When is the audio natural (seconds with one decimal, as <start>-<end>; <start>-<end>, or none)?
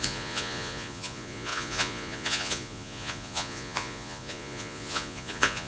none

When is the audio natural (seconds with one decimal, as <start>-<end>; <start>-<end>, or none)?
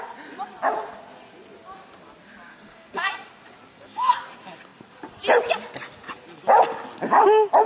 0.0-2.5; 3.1-3.7; 4.2-7.7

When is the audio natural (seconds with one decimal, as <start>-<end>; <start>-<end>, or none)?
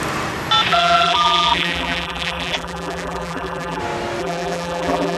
0.0-0.7; 3.8-4.2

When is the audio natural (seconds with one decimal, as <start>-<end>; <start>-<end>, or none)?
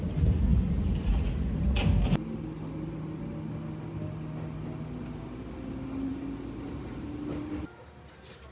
0.0-8.5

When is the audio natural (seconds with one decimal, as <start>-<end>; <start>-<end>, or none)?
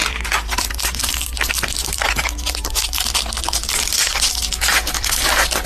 0.0-5.7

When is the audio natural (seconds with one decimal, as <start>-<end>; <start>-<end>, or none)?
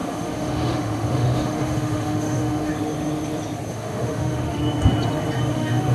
2.7-3.7; 4.6-5.5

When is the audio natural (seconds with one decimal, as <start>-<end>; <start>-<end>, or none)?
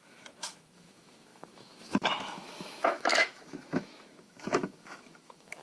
none